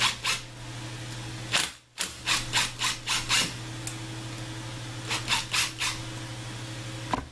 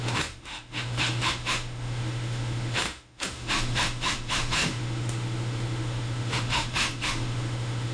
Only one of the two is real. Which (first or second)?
first